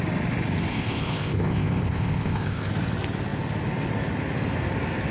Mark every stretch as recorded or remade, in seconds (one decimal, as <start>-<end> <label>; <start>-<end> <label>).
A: 0.0-0.7 recorded; 0.7-2.7 remade; 2.7-5.1 recorded